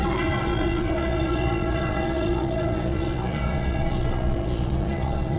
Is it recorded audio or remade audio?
remade